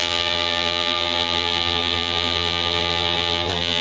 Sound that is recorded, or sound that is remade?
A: remade